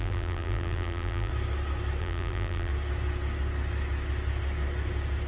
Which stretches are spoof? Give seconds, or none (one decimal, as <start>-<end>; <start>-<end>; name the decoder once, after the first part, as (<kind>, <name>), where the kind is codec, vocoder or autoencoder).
0.0-1.3 (vocoder, BigVGAN v2); 2.0-2.7